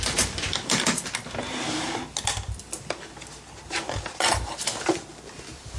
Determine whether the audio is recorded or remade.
recorded